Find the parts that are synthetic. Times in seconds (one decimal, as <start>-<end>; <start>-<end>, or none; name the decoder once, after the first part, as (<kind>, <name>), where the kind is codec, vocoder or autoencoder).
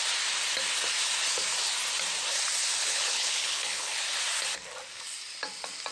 2.8-4.0 (codec, HILCodec)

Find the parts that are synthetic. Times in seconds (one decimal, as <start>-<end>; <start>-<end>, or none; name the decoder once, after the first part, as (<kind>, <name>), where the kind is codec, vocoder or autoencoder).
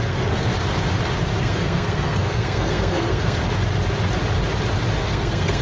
0.0-0.5 (codec, SNAC); 1.4-3.4; 5.0-5.6